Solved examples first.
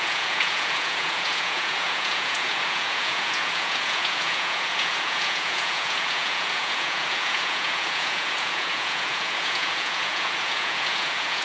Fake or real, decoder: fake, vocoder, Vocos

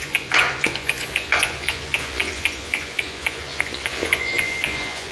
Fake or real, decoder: fake, vocoder, Vocos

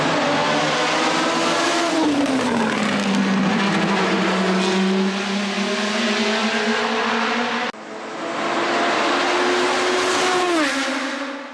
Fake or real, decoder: real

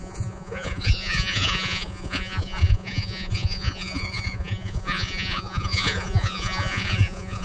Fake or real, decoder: fake, vocoder, Vocos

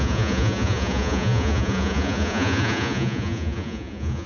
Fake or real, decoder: fake, vocoder, Vocos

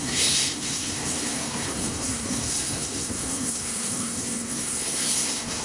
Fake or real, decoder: fake, codec, SNAC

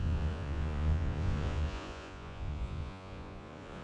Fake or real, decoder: fake, vocoder, Vocos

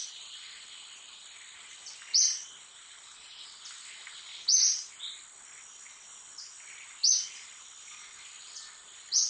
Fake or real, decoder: real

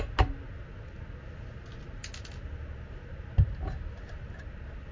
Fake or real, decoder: real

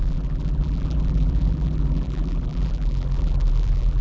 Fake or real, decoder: fake, vocoder, BigVGAN v2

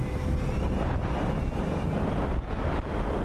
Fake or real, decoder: real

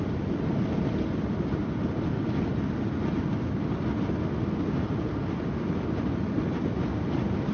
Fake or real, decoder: real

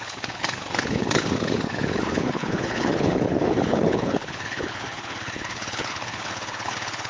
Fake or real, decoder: fake, codec, HILCodec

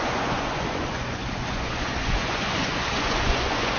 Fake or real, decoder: fake, vocoder, Vocos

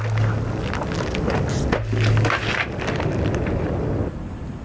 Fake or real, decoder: real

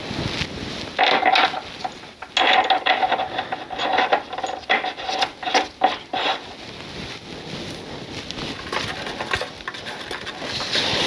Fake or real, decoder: real